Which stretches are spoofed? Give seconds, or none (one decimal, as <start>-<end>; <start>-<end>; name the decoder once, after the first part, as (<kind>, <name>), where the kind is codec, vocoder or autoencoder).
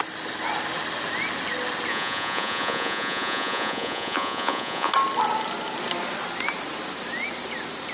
1.9-4.9 (vocoder, Vocos)